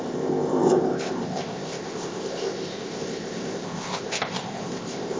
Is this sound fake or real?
fake